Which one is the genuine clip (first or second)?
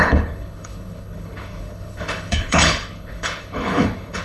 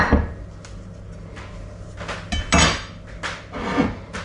second